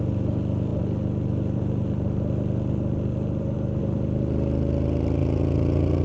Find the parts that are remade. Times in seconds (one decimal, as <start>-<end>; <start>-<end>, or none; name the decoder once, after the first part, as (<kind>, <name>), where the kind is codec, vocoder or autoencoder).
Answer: 5.2-6.0 (vocoder, Vocos)